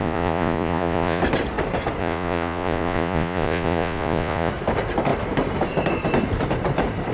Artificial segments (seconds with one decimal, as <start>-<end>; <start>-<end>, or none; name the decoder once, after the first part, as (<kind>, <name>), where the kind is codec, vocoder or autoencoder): 0.0-1.2 (vocoder, Vocos); 2.0-4.5